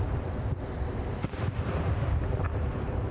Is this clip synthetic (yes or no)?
no